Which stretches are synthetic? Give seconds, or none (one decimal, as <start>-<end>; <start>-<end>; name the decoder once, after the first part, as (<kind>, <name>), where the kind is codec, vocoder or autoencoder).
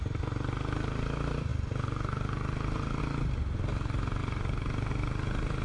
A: 4.2-4.9 (vocoder, BigVGAN v2)